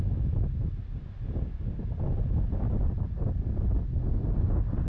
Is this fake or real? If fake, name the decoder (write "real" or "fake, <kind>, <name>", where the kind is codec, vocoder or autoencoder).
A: real